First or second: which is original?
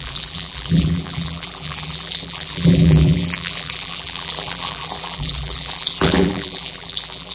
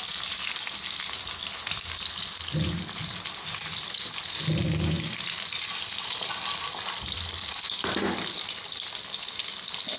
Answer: second